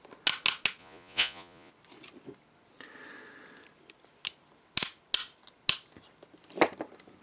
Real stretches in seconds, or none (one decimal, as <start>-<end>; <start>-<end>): 0.0-0.8; 1.7-7.2